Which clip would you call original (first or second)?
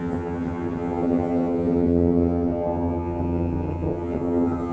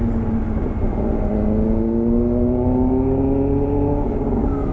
second